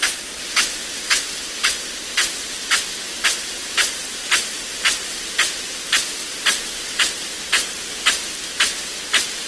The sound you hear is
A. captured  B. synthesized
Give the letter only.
A